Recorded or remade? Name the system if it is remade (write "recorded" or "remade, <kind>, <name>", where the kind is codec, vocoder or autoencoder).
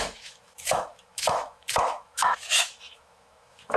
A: remade, autoencoder, DAC-VAE